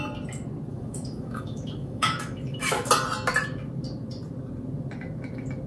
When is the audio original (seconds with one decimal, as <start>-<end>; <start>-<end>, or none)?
0.0-0.7; 2.9-5.7